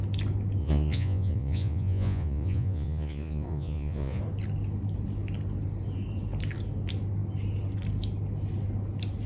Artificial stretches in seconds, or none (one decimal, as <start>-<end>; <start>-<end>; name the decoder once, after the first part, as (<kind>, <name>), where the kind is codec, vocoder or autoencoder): 0.6-4.2 (vocoder, Vocos)